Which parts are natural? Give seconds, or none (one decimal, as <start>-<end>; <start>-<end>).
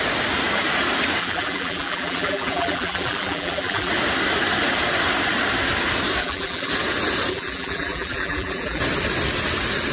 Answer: 0.0-1.2; 3.9-6.2; 6.7-7.3; 8.8-9.9